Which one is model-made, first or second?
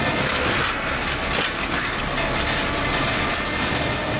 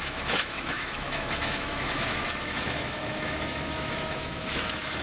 second